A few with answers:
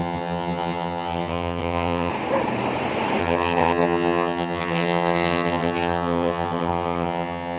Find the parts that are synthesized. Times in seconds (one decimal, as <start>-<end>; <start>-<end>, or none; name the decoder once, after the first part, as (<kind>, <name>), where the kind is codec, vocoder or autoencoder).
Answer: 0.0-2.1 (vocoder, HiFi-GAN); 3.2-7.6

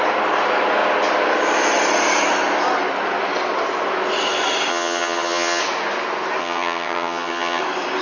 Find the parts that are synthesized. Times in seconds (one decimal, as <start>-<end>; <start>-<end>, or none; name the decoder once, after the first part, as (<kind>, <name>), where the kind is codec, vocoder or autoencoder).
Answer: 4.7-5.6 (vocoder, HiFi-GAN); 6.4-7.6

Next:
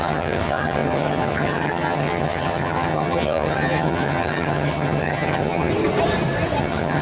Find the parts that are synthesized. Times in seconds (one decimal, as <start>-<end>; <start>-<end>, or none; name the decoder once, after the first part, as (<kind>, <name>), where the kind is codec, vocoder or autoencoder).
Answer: 0.0-5.7 (vocoder, HiFi-GAN); 6.6-7.0